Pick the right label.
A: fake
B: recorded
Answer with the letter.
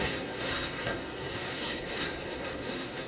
A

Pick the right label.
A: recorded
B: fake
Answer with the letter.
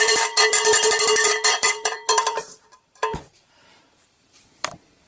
B